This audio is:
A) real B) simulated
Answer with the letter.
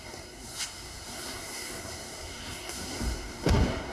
B